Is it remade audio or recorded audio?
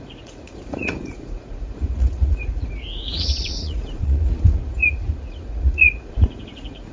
remade